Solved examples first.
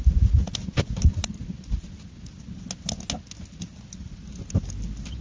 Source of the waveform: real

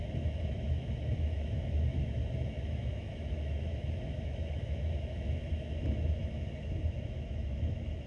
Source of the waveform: fake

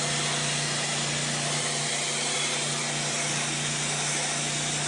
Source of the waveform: real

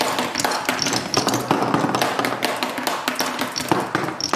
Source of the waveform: real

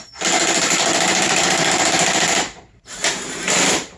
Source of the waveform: fake